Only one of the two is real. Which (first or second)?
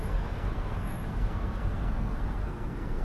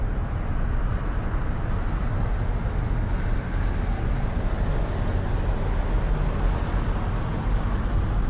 second